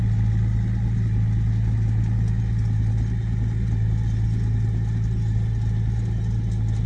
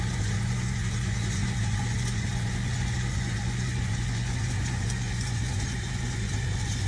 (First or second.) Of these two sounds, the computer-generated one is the second